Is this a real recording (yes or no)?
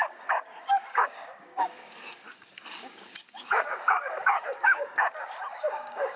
no